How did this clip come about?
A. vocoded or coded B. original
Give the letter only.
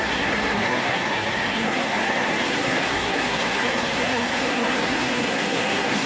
A